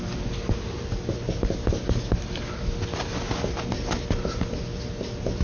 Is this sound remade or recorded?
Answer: recorded